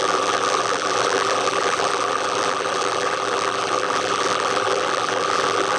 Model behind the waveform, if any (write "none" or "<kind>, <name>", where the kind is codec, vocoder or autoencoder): vocoder, BigVGAN v2